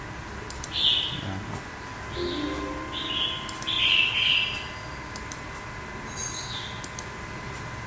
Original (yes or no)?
yes